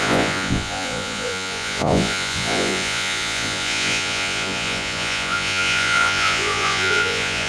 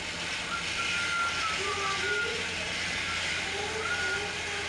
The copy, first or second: first